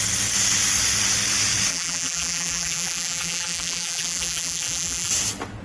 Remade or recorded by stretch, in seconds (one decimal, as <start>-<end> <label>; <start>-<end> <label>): 0.0-1.7 recorded; 1.7-5.1 remade; 5.1-5.6 recorded